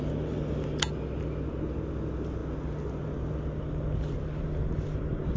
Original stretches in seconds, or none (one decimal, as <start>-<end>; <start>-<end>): 0.0-5.4